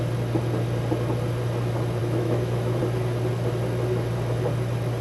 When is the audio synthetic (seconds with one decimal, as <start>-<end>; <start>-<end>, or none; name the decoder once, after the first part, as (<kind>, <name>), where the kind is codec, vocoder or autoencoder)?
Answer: 2.0-2.8 (autoencoder, DAC-VAE)